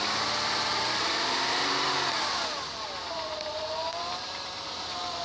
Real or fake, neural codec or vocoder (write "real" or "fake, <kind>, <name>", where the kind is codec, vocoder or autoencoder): fake, vocoder, BigVGAN v2